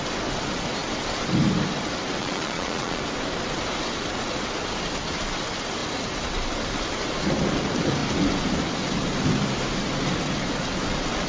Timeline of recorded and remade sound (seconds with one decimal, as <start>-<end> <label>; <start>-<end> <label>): 0.0-2.2 recorded; 2.2-3.0 remade; 3.0-11.3 recorded